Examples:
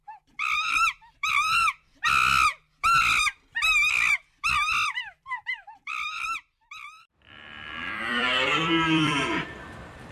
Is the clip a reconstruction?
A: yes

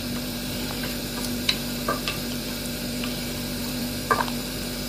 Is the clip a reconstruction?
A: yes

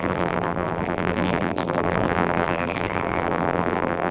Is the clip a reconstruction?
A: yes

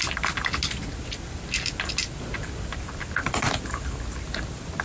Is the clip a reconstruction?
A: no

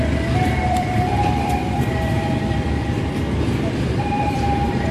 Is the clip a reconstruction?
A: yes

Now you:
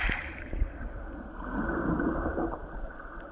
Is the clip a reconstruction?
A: no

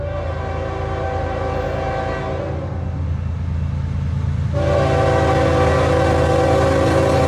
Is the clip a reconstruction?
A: no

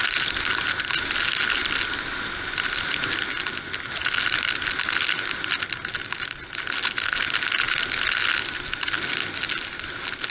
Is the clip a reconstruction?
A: no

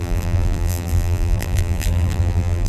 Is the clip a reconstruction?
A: yes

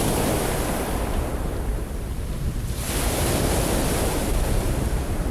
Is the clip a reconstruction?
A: yes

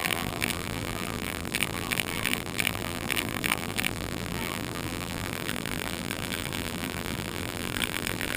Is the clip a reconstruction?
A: yes